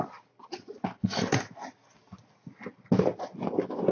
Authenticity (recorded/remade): recorded